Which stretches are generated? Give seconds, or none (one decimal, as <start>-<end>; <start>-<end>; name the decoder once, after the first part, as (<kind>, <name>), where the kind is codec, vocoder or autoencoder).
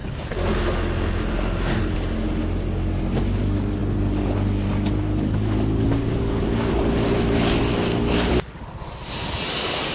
none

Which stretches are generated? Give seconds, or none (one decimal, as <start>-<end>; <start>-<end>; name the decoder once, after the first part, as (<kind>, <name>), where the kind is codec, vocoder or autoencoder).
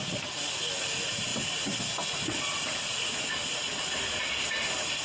none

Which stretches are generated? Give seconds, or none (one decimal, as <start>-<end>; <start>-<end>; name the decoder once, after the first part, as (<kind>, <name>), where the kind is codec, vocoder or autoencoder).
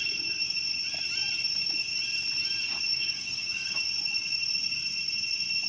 2.9-3.9 (codec, DAC)